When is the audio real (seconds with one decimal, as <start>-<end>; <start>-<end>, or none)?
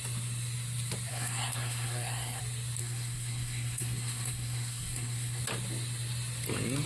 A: 0.0-1.1; 2.4-2.8; 5.4-6.9